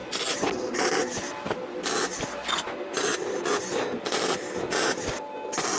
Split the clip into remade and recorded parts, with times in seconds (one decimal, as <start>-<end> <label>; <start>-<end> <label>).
0.0-5.8 recorded